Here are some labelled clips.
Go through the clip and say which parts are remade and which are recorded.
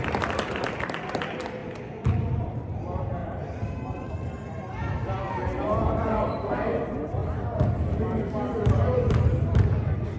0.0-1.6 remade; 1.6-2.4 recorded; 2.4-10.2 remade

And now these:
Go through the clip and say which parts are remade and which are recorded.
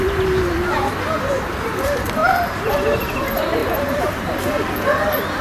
0.0-5.4 remade